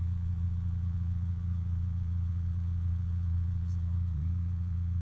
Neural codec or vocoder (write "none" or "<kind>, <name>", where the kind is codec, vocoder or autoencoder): vocoder, Vocos